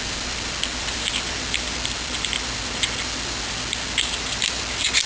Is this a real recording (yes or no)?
yes